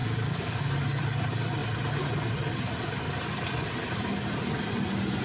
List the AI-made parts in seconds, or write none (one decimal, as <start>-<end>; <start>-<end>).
0.0-0.6